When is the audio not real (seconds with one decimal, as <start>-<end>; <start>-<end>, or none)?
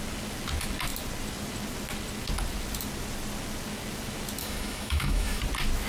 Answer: 4.4-5.4